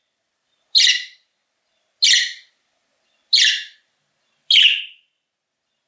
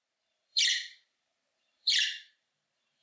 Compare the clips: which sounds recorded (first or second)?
first